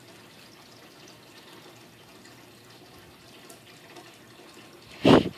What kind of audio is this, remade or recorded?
recorded